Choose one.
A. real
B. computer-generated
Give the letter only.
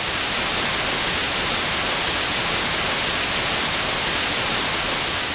A